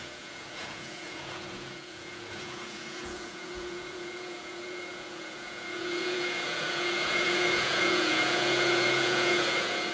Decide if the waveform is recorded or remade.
remade